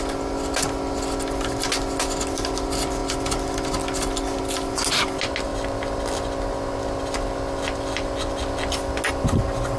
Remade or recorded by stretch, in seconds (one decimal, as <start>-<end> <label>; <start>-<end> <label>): 0.0-9.8 recorded